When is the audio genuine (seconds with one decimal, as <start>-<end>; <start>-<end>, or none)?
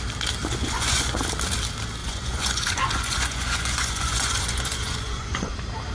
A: 0.0-0.4; 1.2-2.0; 5.5-5.9